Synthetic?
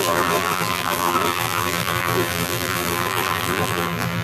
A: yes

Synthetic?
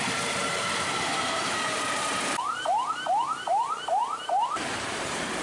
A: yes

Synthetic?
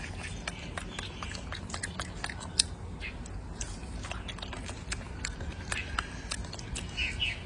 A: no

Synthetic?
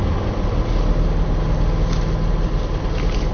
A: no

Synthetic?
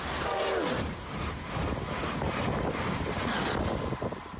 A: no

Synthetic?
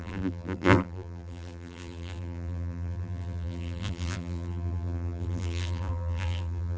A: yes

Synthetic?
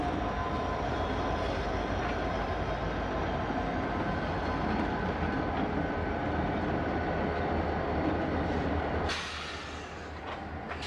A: no